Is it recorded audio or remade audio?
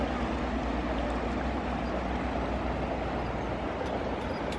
recorded